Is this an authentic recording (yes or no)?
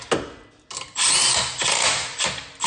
yes